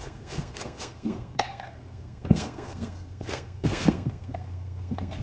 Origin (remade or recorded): remade